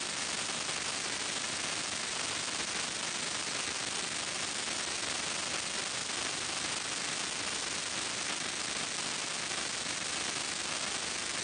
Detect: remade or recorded recorded